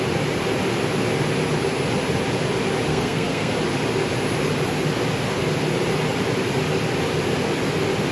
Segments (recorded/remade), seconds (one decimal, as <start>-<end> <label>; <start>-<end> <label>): 0.0-2.9 recorded; 2.9-3.5 remade; 3.5-8.1 recorded